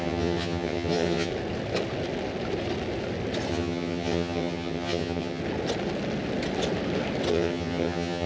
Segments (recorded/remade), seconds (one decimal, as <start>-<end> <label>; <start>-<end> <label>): 0.0-1.3 remade; 1.3-3.5 recorded; 3.5-5.4 remade; 5.4-7.3 recorded; 7.3-8.3 remade